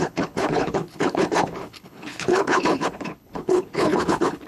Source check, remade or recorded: remade